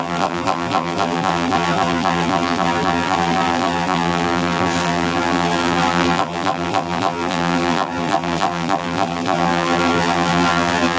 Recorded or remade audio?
remade